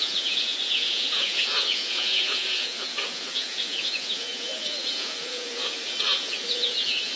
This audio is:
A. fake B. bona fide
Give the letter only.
A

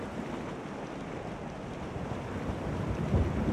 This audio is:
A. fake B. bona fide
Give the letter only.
A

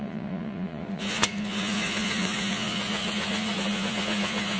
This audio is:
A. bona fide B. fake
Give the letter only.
B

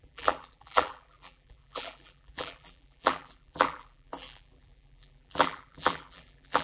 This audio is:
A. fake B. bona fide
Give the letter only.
A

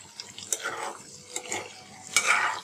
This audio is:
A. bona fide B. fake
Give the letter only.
A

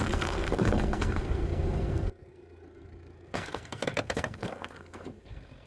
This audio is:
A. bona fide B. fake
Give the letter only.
B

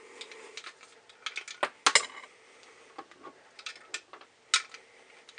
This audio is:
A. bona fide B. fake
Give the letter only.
A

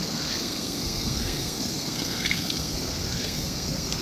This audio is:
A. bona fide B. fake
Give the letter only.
B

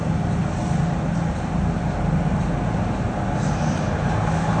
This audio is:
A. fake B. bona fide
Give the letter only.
B